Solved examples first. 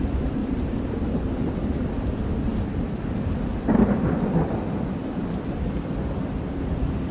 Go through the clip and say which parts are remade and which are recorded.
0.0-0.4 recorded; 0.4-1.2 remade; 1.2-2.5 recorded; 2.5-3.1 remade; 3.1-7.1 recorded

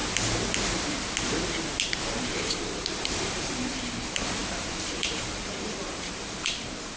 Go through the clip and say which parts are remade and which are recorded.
0.0-2.2 recorded; 2.2-7.0 remade

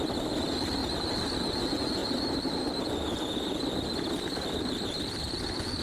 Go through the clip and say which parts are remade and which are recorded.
0.0-0.8 recorded; 0.8-1.5 remade; 1.5-5.8 recorded

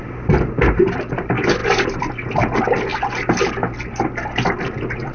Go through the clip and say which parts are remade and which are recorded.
0.0-1.6 recorded; 1.6-2.1 remade; 2.1-5.1 recorded

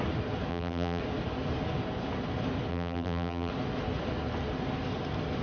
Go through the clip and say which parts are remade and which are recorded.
0.0-0.5 recorded; 0.5-1.0 remade; 1.0-2.7 recorded; 2.7-3.5 remade; 3.5-5.4 recorded

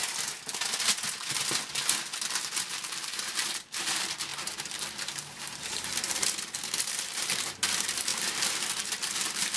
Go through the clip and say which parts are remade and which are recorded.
0.0-2.7 recorded; 2.7-9.6 remade

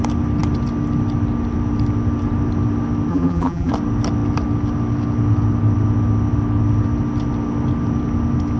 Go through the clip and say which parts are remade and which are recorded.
0.0-3.1 recorded; 3.1-3.7 remade; 3.7-8.6 recorded